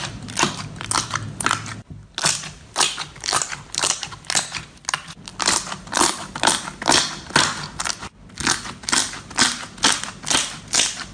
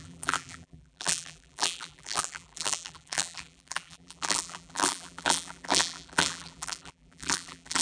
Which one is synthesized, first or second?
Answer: second